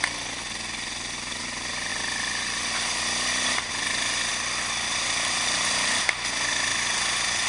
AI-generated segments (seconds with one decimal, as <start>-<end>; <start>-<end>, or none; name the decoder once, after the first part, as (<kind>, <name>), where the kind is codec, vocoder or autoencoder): 1.9-3.7 (vocoder, BigVGAN v2); 4.3-6.0; 6.7-7.5